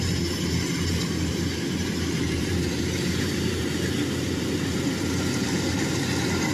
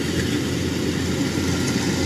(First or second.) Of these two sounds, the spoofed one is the first